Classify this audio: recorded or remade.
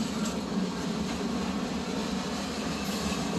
recorded